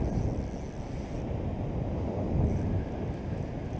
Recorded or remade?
recorded